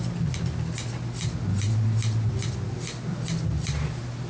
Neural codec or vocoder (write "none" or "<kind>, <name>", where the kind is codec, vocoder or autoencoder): none